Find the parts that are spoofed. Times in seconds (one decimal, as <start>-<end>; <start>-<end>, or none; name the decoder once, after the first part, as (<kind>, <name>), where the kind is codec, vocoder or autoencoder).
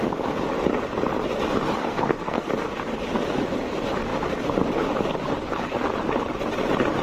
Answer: 1.8-2.5 (codec, SNAC)